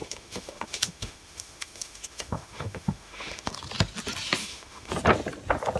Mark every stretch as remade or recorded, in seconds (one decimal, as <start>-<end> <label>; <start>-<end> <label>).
0.0-3.5 remade; 3.5-4.4 recorded; 4.4-4.9 remade; 4.9-5.8 recorded